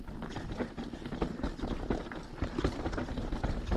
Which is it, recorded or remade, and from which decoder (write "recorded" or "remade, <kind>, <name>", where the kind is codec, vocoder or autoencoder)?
recorded